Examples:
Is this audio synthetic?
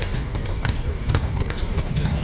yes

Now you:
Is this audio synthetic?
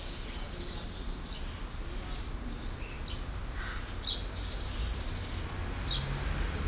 no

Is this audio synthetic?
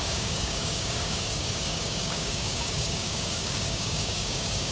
yes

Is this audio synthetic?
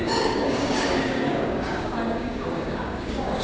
yes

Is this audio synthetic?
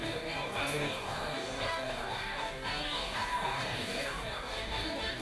yes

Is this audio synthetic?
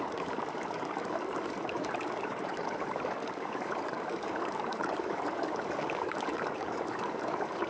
yes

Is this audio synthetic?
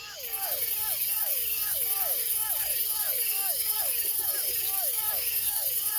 yes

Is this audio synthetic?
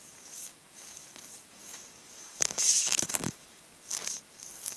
yes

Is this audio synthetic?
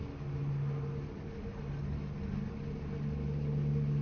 no